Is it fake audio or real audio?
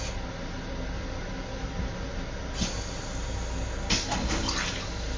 real